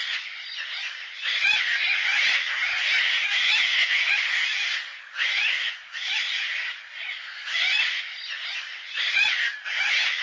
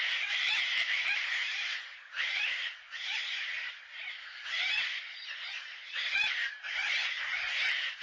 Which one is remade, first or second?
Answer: second